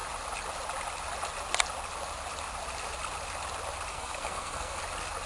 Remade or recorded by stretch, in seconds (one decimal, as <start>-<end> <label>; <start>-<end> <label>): 0.0-3.9 recorded; 3.9-4.8 remade; 4.8-5.3 recorded